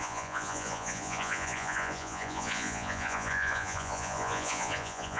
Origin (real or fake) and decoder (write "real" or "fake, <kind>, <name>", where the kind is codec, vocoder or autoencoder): fake, vocoder, Vocos